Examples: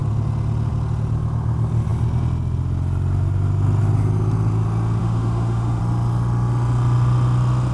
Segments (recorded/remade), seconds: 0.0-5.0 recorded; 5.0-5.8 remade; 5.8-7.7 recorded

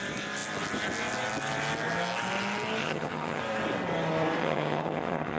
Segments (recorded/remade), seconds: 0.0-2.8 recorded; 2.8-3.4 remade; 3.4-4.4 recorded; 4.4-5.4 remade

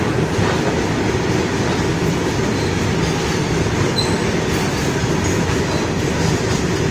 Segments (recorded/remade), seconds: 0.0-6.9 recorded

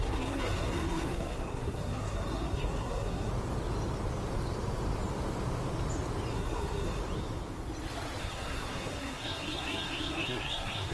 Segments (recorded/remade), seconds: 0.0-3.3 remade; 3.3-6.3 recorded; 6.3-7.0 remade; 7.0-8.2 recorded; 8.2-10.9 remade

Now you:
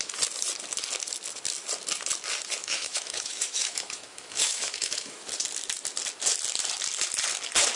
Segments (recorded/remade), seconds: 0.0-2.6 recorded; 2.6-5.3 remade; 5.3-7.8 recorded